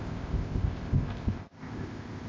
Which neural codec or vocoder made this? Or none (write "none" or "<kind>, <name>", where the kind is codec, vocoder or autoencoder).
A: codec, ZipCodec